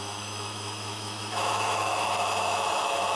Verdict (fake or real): fake